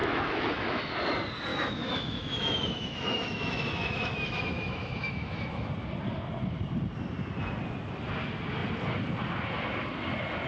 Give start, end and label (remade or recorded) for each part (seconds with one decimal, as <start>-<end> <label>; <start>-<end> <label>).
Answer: 0.0-0.9 remade; 0.9-1.5 recorded; 1.5-5.7 remade; 5.7-10.5 recorded